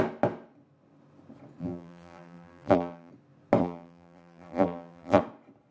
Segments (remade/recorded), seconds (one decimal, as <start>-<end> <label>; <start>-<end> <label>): 0.0-1.6 recorded; 1.6-3.1 remade; 3.1-3.6 recorded; 3.6-5.2 remade; 5.2-5.7 recorded